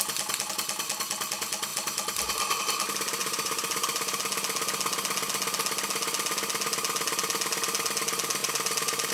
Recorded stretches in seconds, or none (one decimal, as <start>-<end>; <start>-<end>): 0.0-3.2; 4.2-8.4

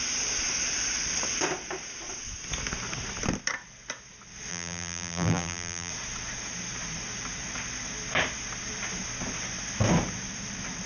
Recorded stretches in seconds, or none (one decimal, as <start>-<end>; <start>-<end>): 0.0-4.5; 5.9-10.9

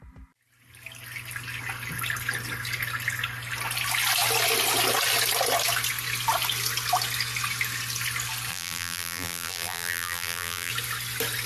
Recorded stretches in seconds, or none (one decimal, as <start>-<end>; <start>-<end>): 0.0-8.5; 10.7-11.5

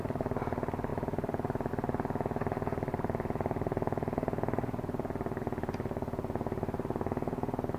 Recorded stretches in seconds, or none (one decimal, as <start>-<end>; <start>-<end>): 0.0-0.9; 1.7-7.8